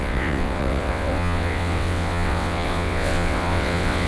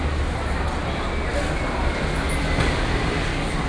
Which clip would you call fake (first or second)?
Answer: first